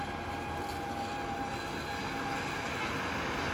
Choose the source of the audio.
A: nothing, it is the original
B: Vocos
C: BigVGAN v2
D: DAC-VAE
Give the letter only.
A